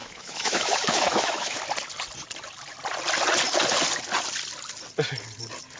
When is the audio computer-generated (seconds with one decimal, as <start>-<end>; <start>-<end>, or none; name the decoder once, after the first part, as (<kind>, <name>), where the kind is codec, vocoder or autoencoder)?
0.0-1.6 (autoencoder, DAC-VAE)